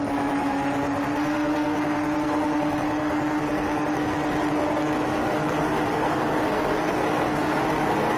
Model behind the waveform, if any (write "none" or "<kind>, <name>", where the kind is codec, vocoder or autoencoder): codec, SNAC